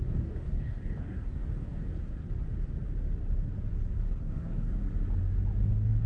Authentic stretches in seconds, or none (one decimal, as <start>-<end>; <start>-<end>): 2.1-4.0; 4.8-5.6